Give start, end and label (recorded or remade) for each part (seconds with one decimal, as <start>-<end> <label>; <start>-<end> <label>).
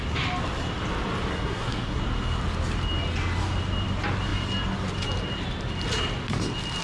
0.0-1.3 recorded; 1.3-2.0 remade; 2.0-6.8 recorded